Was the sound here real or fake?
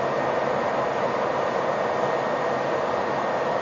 real